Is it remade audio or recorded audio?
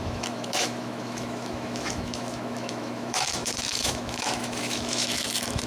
remade